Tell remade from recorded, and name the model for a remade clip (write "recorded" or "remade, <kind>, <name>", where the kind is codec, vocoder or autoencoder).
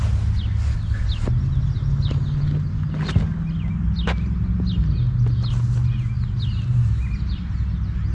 recorded